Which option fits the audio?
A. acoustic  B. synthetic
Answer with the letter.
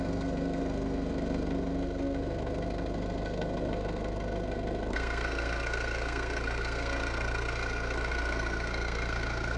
B